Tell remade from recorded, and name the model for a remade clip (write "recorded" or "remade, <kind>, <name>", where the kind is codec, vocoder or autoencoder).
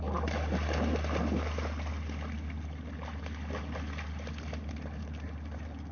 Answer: recorded